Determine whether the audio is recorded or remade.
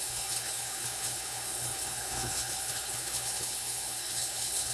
remade